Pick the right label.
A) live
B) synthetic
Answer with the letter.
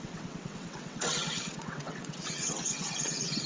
B